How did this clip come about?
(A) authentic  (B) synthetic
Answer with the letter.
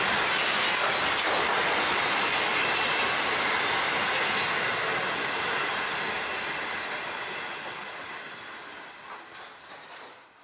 A